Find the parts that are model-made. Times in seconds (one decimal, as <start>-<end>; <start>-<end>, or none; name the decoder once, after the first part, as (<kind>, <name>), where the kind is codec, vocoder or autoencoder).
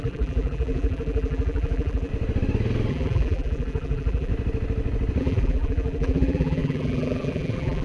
0.0-2.1 (vocoder, BigVGAN v2); 2.9-4.3; 5.2-7.8